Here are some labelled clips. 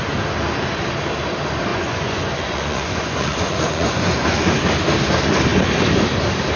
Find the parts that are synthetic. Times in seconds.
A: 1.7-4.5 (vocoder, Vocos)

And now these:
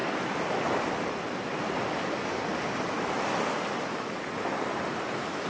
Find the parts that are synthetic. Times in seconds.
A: none

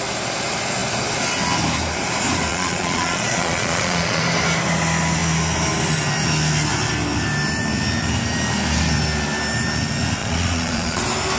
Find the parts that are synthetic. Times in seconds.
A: 2.5-4.2 (vocoder, Vocos); 10.2-11.0

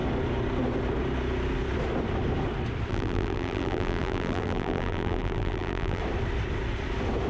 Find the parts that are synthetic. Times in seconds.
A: 2.9-6.0 (vocoder, BigVGAN v2)

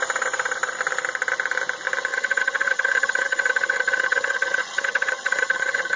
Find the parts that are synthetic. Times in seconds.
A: 2.1-6.0 (vocoder, HiFi-GAN)

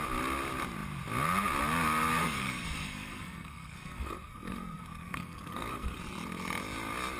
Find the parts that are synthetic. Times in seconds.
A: 2.2-6.0 (codec, SNAC)

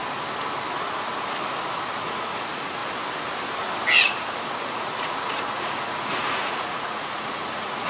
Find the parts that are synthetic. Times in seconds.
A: 2.0-2.8 (vocoder, Vocos); 4.0-7.9